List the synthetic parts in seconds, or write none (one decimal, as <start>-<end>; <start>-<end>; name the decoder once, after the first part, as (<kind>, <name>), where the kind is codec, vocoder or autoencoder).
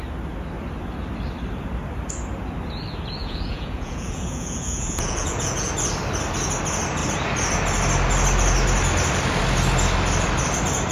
3.2-5.7 (vocoder, Vocos)